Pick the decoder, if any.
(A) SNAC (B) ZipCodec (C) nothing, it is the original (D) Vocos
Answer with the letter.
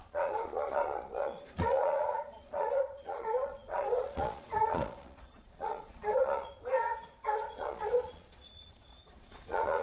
D